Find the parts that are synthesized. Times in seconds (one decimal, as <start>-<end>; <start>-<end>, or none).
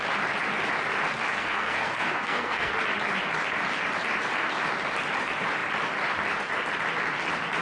1.3-2.7